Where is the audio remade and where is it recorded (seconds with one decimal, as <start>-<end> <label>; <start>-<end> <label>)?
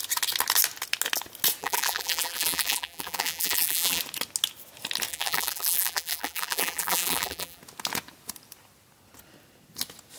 0.0-1.6 recorded; 1.6-4.0 remade; 4.0-5.1 recorded; 5.1-7.6 remade; 7.6-10.2 recorded